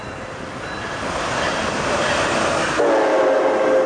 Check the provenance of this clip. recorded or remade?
recorded